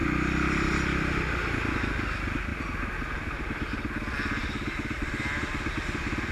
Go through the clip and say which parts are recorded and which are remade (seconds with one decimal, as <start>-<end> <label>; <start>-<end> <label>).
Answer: 0.0-2.5 recorded; 2.5-3.4 remade; 3.4-6.3 recorded